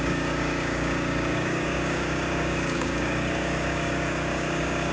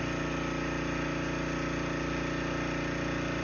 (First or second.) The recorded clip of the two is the second